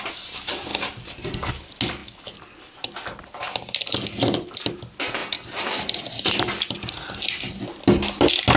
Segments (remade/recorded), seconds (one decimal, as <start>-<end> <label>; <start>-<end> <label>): 0.0-8.6 recorded

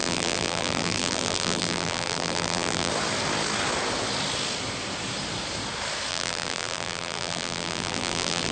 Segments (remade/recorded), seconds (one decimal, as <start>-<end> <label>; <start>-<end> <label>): 0.0-2.9 remade; 2.9-6.1 recorded; 6.1-8.5 remade